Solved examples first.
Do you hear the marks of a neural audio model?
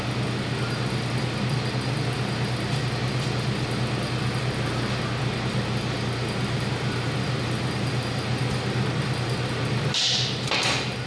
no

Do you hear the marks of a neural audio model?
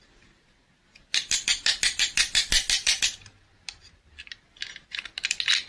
no